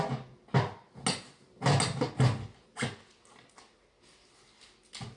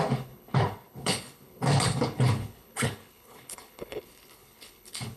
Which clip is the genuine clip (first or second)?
first